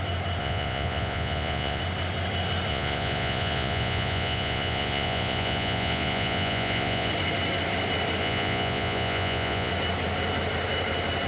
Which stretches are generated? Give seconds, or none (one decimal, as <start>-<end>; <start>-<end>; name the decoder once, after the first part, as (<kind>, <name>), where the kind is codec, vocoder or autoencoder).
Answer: 0.4-1.8 (vocoder, Vocos); 2.7-7.1; 8.2-9.7